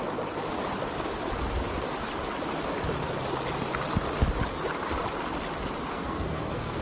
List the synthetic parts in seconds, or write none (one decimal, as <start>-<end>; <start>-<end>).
5.9-6.8